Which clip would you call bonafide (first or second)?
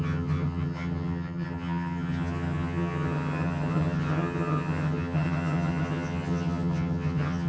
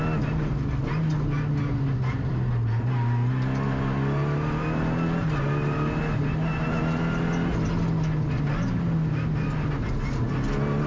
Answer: second